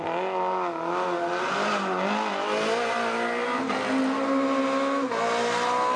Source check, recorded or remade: recorded